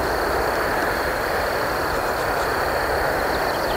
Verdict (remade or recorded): recorded